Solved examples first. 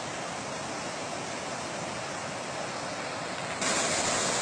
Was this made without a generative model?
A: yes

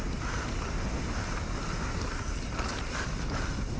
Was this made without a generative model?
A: yes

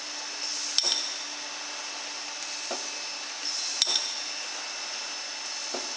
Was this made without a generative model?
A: yes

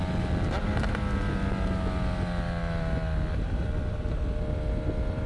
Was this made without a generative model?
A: yes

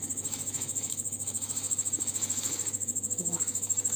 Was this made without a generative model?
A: no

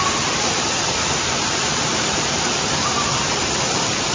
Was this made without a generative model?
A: no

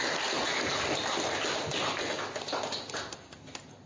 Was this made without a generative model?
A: yes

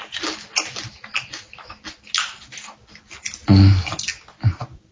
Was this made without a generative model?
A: yes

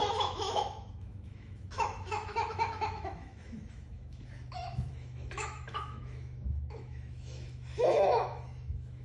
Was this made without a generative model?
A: no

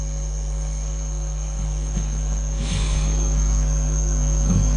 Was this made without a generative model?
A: no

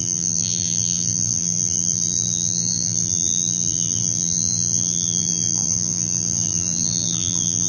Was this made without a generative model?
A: no